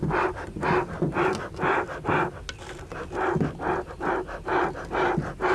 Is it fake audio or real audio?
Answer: real